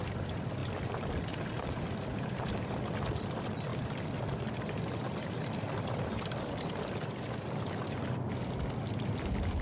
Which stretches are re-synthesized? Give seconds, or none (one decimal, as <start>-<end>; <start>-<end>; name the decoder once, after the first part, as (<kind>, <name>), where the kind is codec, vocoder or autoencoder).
none

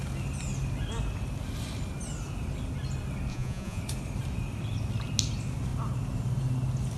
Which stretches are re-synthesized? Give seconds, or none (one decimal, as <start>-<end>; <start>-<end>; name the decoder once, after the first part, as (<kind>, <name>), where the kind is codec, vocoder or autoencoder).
3.3-3.8 (vocoder, Vocos)

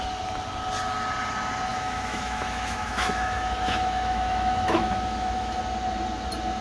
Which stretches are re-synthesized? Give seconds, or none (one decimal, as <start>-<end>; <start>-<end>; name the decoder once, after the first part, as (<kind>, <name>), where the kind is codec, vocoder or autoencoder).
1.7-5.6 (autoencoder, DAC-VAE)

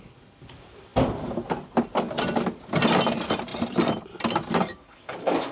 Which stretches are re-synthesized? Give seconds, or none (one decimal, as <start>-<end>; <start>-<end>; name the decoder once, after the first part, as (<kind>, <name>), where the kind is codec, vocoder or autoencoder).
4.7-5.5 (codec, DAC)

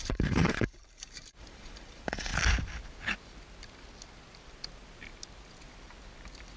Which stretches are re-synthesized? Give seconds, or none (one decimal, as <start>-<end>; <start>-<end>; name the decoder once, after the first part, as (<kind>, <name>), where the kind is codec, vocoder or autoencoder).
0.0-2.3 (vocoder, BigVGAN v2)